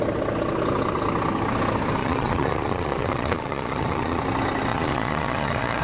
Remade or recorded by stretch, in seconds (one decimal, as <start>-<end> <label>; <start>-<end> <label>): 0.0-2.0 recorded; 2.0-4.2 remade; 4.2-4.7 recorded; 4.7-5.8 remade